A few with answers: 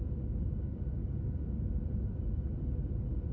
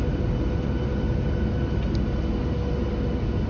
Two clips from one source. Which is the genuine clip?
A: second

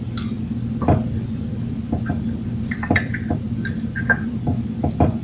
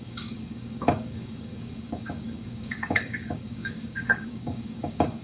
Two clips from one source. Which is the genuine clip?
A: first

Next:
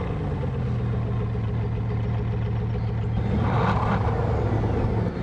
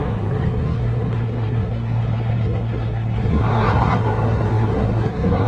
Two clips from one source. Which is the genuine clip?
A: first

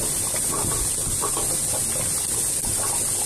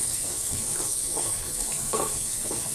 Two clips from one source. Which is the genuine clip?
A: first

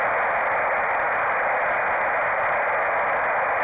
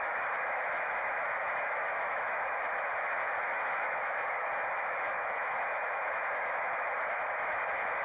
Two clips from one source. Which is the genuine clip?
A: first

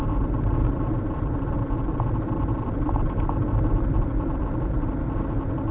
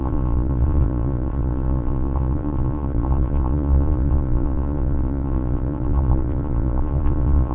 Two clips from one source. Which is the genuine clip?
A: first